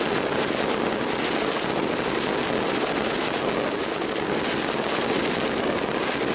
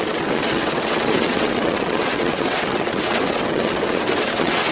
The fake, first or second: second